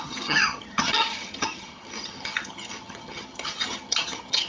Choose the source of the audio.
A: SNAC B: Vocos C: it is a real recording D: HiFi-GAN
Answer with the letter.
D